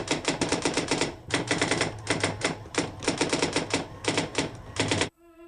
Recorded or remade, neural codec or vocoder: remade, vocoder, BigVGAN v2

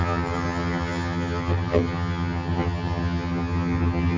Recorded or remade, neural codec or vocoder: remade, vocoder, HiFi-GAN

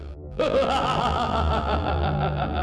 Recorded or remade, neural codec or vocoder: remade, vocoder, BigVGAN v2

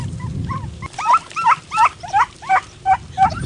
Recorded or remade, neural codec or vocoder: recorded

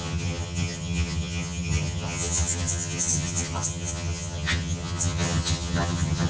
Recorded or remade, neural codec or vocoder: remade, vocoder, HiFi-GAN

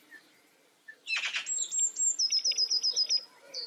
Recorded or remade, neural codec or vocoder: recorded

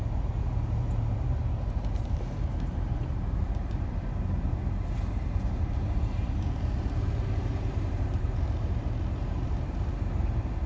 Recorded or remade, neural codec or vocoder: remade, vocoder, BigVGAN v2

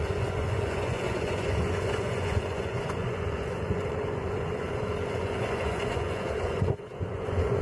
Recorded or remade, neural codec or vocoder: remade, vocoder, Vocos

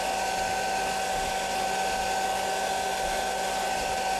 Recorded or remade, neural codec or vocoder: recorded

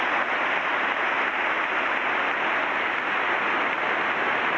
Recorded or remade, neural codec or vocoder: recorded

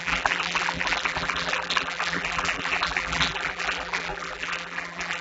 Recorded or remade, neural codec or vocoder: remade, vocoder, BigVGAN v2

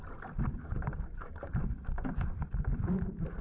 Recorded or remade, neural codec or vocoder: recorded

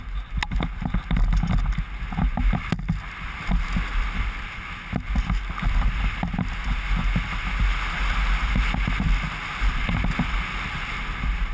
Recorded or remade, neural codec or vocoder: recorded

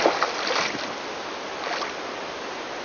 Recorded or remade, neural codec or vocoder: recorded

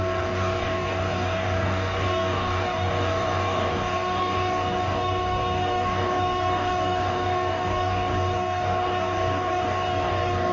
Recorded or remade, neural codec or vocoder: remade, codec, DAC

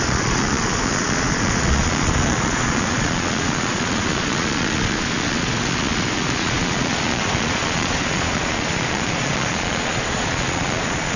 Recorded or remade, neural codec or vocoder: remade, vocoder, Vocos